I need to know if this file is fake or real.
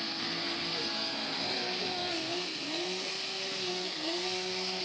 fake